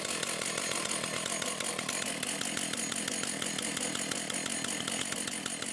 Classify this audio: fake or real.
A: real